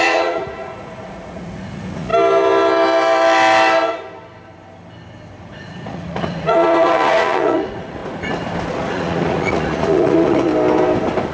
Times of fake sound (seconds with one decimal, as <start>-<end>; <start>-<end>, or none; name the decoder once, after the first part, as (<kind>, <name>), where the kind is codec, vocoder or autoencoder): 0.0-2.1 (vocoder, Vocos); 5.4-8.0; 8.7-10.5